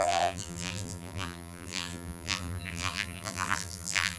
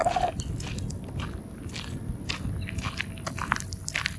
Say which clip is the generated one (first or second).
first